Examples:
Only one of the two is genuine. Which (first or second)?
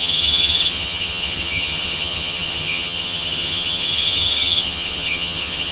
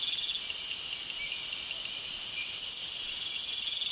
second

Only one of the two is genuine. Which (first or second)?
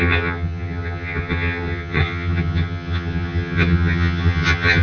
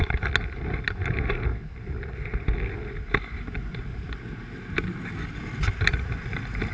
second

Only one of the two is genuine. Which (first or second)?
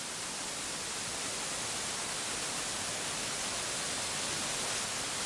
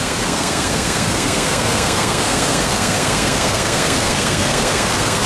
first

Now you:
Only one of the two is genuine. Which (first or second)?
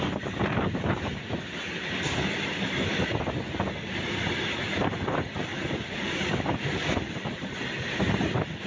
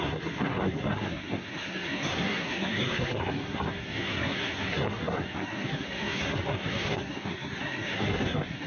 first